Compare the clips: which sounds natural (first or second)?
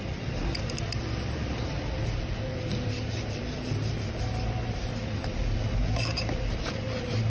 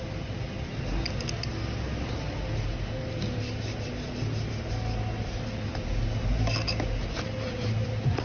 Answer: second